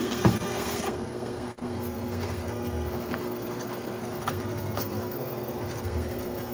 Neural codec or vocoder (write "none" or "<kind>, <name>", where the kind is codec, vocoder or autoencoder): codec, SNAC